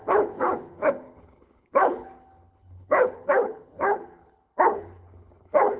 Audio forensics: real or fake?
fake